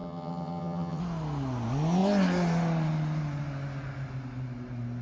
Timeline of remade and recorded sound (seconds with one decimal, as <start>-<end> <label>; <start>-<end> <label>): 0.0-1.0 remade; 1.0-5.0 recorded